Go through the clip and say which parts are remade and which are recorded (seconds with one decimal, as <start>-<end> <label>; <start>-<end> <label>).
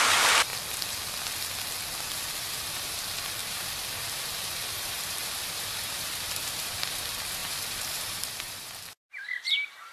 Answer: 0.0-0.5 remade; 0.5-2.7 recorded; 2.7-9.9 remade